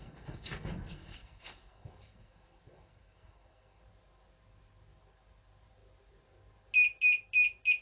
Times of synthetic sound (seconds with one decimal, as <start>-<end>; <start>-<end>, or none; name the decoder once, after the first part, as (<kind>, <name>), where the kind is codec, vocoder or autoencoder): 0.0-3.8 (codec, SNAC)